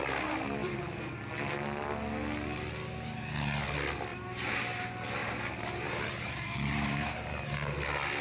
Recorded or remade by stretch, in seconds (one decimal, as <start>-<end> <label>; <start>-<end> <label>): 0.0-0.6 recorded; 0.6-1.2 remade; 1.2-4.1 recorded; 4.1-4.7 remade; 4.7-5.2 recorded; 5.2-7.3 remade; 7.3-8.2 recorded